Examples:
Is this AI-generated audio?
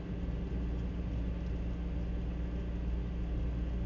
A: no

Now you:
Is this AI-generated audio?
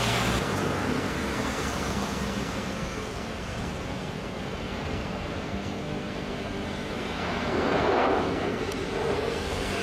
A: yes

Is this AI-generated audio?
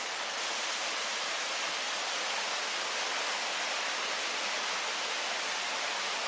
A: no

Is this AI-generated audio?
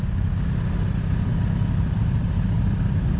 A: no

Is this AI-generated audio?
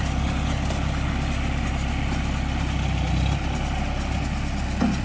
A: no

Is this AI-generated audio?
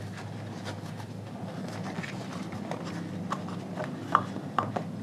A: no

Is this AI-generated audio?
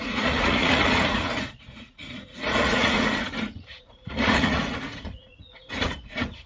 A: yes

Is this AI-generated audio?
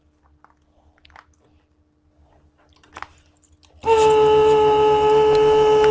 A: no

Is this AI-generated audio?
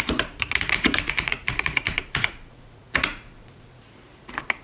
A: yes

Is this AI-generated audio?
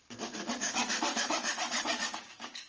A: yes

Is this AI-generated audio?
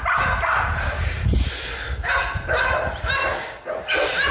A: no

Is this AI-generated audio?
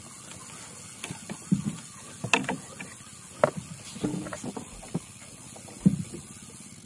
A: no